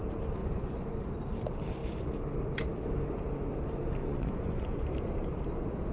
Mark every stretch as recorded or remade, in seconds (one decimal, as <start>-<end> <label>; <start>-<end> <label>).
0.0-0.4 recorded; 0.4-1.1 remade; 1.1-4.0 recorded; 4.0-4.9 remade; 4.9-5.9 recorded